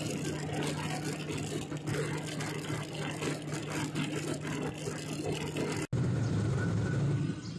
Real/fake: real